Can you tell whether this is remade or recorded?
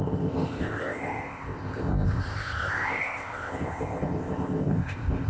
remade